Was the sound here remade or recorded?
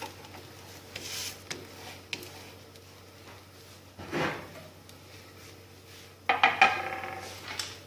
recorded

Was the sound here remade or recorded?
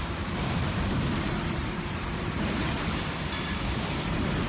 remade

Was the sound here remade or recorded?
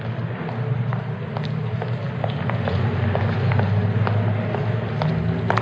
recorded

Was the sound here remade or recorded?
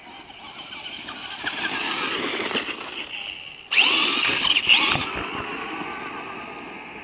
recorded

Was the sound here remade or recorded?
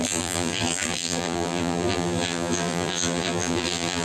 remade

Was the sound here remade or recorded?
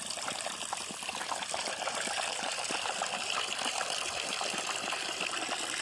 remade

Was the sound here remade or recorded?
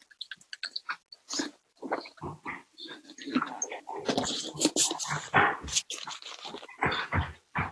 recorded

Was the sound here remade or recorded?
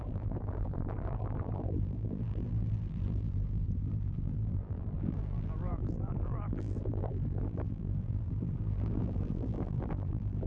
remade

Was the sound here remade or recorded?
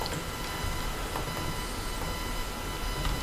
remade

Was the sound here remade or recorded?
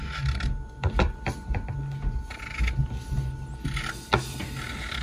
recorded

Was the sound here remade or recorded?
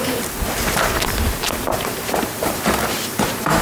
remade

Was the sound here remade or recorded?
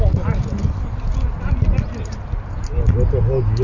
recorded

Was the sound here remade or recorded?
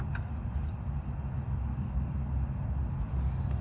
recorded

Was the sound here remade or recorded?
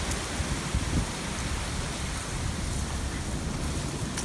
recorded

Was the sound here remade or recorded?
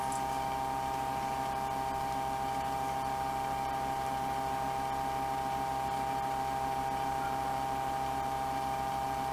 recorded